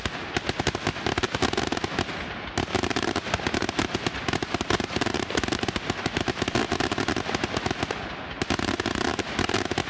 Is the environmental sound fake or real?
real